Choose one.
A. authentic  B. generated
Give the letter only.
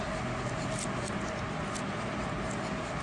A